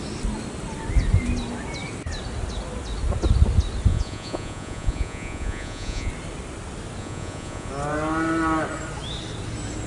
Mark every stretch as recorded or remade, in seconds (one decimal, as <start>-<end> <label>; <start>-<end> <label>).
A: 0.0-3.9 recorded; 3.9-6.1 remade; 6.1-7.0 recorded; 7.0-7.7 remade; 7.7-9.9 recorded